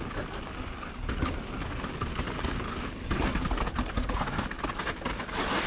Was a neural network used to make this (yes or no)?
no